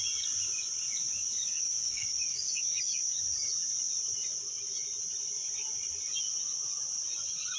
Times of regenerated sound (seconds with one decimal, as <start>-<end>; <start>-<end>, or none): 1.4-2.8